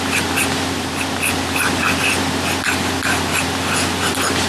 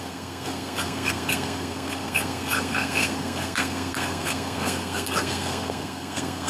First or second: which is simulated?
second